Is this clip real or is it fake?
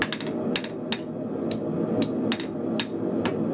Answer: real